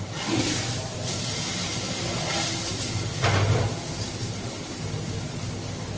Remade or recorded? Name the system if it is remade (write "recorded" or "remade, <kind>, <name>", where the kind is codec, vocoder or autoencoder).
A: recorded